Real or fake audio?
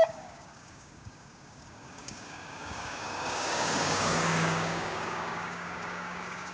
fake